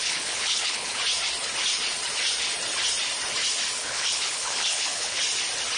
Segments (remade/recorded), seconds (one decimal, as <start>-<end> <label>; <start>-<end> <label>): 0.0-1.0 remade; 1.0-3.8 recorded; 3.8-5.2 remade; 5.2-5.8 recorded